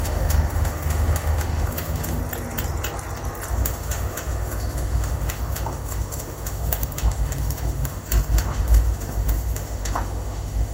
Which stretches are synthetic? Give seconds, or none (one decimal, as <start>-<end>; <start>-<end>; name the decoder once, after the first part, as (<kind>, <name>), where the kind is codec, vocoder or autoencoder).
0.0-2.2 (autoencoder, DAC-VAE); 3.5-10.7